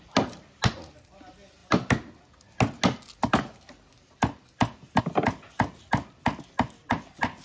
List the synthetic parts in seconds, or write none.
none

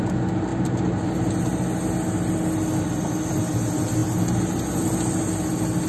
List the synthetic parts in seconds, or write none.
none

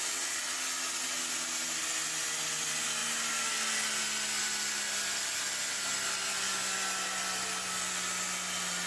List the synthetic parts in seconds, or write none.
none

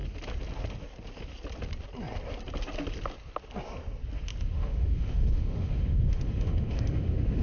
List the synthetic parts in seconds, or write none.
4.4-7.4 (autoencoder, DAC-VAE)

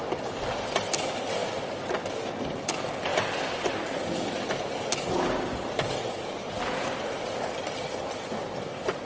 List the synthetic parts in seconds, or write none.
none

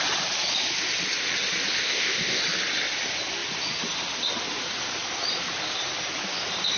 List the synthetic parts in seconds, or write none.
1.8-2.4 (codec, ZipCodec)

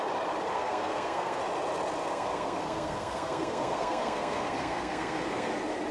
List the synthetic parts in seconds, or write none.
0.5-1.4 (codec, SNAC); 2.0-5.5